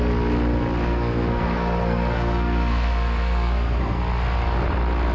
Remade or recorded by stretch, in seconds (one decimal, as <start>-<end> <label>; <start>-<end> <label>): 0.0-0.9 recorded; 0.9-4.0 remade; 4.0-5.1 recorded